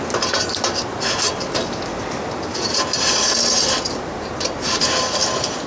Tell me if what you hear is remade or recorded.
recorded